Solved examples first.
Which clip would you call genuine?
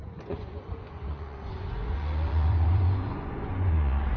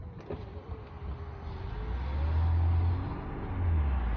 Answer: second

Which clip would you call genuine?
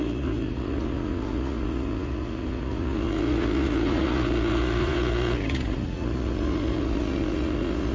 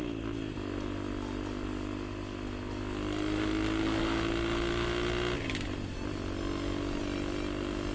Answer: second